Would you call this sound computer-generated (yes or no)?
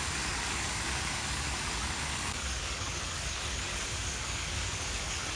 yes